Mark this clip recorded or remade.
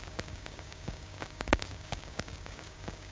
remade